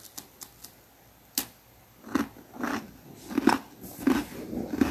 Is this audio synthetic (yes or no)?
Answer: no